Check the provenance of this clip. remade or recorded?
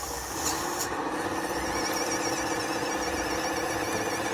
remade